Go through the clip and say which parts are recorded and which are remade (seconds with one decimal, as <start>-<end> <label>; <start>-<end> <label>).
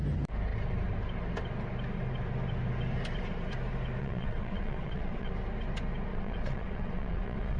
0.0-4.0 recorded; 4.0-5.3 remade; 5.3-6.1 recorded; 6.1-7.6 remade